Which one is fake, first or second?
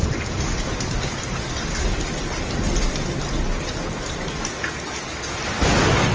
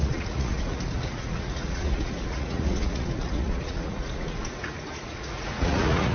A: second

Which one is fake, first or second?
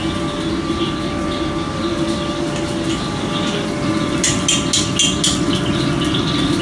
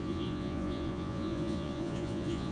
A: second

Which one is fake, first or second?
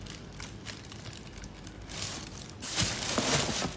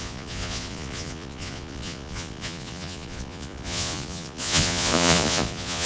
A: second